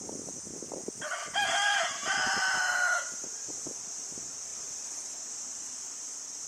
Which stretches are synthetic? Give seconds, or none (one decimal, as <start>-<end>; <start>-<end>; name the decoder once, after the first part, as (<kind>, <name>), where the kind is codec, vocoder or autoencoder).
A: 4.5-5.0 (vocoder, BigVGAN v2)